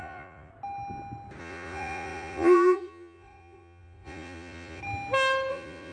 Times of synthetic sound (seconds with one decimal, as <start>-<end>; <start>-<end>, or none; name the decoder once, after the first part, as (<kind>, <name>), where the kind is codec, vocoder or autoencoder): 0.0-0.5 (vocoder, Vocos); 1.4-4.8; 5.5-5.9